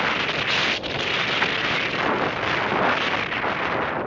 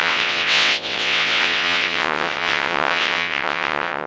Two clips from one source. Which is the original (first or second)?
first